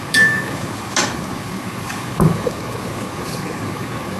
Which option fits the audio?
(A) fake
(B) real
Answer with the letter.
A